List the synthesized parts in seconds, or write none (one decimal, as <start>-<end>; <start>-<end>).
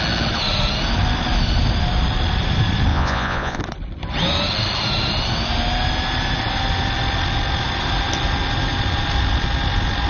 2.9-3.6